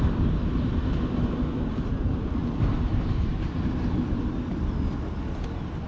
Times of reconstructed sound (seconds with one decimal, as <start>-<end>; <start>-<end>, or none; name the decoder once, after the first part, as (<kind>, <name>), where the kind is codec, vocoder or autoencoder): none